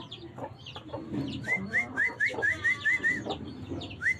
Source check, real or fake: real